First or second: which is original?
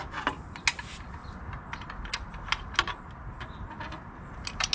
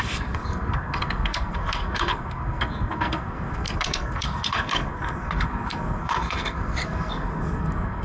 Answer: first